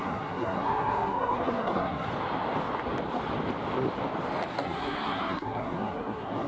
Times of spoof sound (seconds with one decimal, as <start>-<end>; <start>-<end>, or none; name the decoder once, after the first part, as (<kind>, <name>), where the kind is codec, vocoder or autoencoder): 0.0-2.1 (codec, SNAC); 4.5-6.5